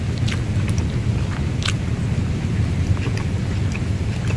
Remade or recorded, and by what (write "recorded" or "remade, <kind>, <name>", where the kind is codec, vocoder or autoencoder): recorded